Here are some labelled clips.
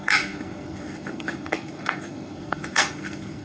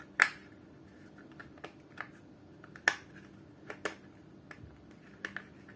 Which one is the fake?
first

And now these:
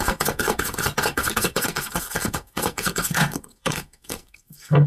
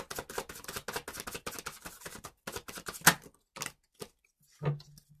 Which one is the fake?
first